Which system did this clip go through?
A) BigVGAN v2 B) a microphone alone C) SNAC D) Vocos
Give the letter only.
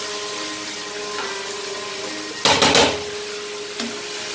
B